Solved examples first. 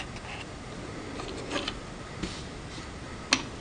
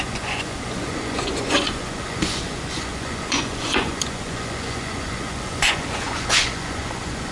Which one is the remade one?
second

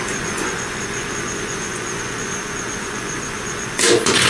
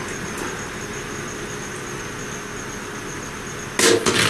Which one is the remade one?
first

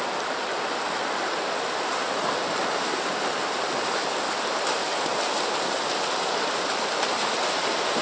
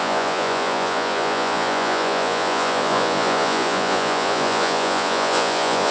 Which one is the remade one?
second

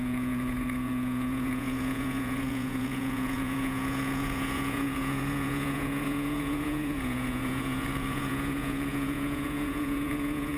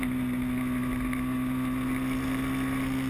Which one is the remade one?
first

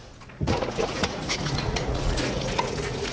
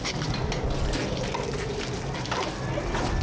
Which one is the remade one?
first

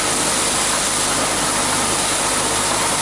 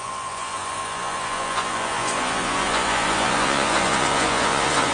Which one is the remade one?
second